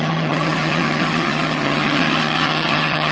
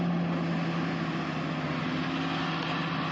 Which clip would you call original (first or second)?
second